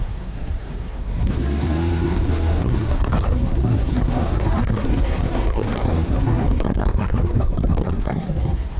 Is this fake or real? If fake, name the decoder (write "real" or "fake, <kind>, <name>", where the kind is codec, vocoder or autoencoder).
fake, codec, SNAC